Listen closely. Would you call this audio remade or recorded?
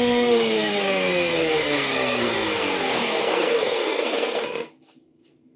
remade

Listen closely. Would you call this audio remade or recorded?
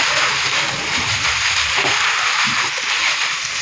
remade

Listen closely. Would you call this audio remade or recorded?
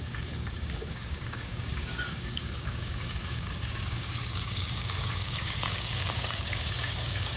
remade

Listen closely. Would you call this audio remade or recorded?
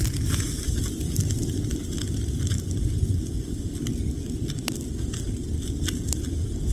remade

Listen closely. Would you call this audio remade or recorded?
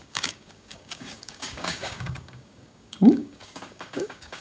remade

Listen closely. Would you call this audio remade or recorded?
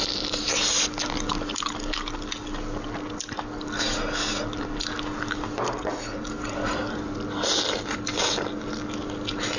recorded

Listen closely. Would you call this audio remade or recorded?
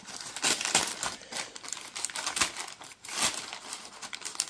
recorded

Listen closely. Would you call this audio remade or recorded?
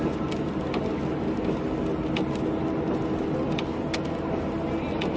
recorded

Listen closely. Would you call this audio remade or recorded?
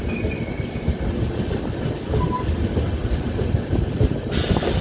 recorded